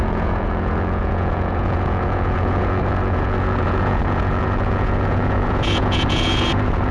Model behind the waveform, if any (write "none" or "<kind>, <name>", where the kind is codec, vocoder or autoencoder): vocoder, Vocos